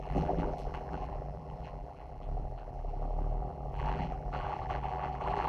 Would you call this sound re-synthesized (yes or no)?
yes